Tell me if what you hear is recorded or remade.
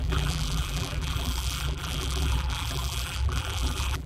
remade